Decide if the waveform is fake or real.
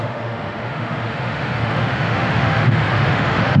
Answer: fake